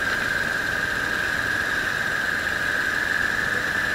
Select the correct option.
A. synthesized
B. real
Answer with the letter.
B